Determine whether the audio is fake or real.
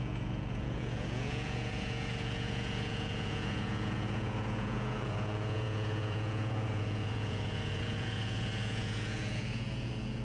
fake